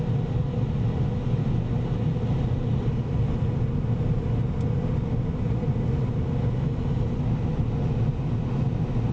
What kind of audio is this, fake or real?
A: real